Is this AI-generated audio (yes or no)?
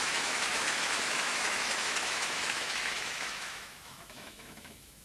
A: yes